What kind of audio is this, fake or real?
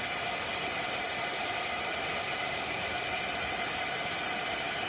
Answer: real